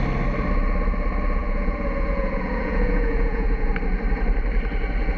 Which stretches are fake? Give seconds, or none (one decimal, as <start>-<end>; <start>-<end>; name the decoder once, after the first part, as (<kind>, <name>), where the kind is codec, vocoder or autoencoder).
1.4-3.7 (vocoder, Vocos)